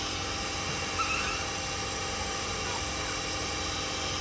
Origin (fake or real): real